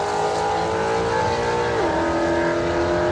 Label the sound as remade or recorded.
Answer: recorded